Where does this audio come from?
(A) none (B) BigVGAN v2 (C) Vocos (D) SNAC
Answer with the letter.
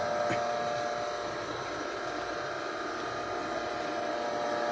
A